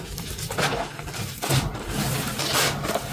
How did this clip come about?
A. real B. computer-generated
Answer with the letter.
A